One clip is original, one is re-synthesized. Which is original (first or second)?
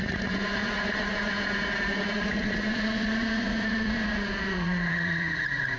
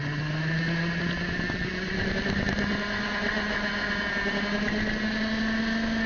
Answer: second